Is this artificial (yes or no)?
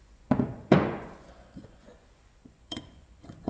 yes